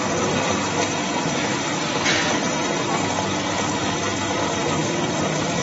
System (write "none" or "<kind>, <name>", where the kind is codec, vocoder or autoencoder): none